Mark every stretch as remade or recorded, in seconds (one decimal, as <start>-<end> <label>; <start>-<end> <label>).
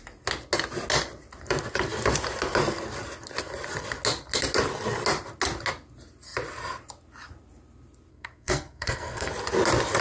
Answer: 0.0-8.1 recorded; 8.1-9.3 remade; 9.3-10.0 recorded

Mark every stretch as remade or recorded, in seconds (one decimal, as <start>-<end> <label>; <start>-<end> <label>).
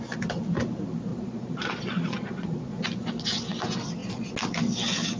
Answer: 0.0-1.1 recorded; 1.1-2.8 remade; 2.8-5.2 recorded